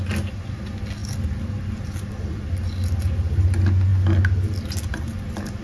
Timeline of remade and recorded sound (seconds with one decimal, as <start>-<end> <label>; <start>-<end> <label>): 0.0-5.6 recorded